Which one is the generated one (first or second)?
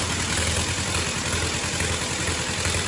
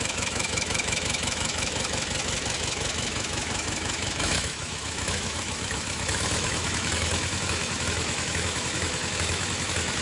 second